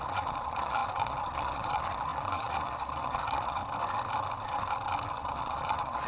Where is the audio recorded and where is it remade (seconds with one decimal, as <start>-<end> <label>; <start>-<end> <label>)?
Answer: 0.0-3.6 remade; 3.6-5.1 recorded; 5.1-6.1 remade